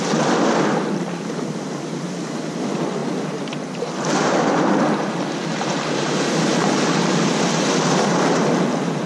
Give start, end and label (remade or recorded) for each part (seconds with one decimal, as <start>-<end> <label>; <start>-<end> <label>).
0.0-9.1 recorded